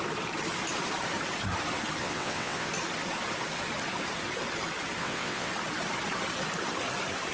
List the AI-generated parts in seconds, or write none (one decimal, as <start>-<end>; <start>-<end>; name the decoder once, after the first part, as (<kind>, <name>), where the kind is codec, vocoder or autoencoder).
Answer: 2.0-2.7 (vocoder, WaveNeXt); 5.0-5.5